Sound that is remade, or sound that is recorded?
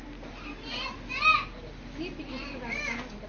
recorded